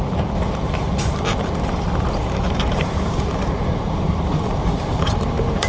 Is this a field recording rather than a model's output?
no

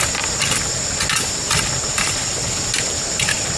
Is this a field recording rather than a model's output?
no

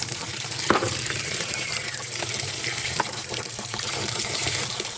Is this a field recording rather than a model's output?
no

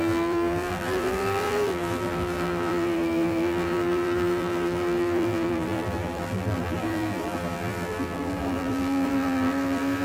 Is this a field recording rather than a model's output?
no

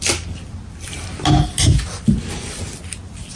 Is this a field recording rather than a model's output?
yes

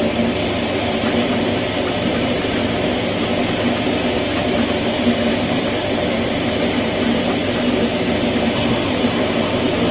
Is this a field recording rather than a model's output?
no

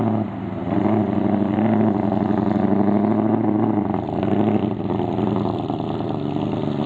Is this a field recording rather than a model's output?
yes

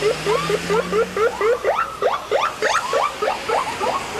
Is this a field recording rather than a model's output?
yes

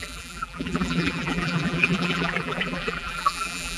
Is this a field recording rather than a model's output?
no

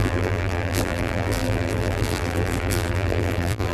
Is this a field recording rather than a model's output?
no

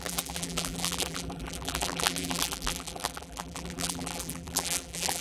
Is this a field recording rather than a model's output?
no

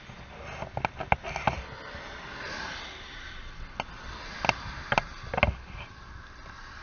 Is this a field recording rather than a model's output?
yes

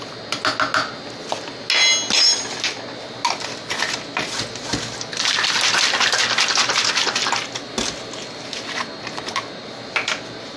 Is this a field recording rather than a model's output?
yes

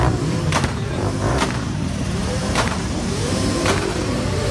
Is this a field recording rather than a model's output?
no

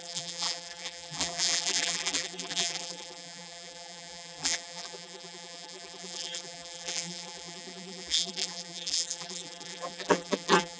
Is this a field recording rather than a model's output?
no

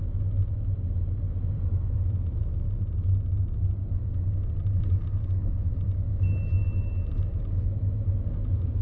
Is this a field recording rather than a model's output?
yes